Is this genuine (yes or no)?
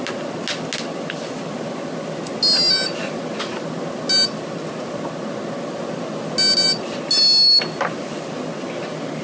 yes